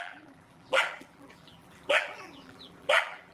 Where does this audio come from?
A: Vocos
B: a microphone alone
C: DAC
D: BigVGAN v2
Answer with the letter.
D